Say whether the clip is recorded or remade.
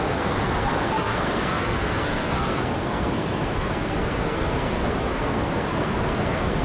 remade